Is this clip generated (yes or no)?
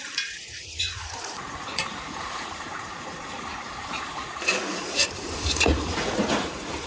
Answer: yes